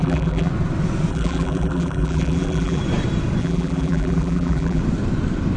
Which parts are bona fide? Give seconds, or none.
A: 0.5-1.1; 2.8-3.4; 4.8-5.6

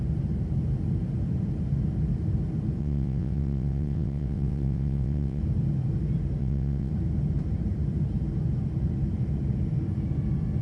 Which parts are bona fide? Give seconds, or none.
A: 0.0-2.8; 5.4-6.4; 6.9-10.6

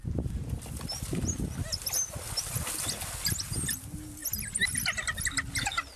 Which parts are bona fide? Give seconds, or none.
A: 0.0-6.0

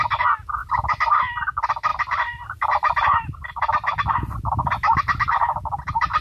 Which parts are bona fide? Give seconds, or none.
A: 0.0-1.9; 4.1-6.2